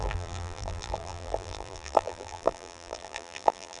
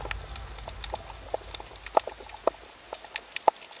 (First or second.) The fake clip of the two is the first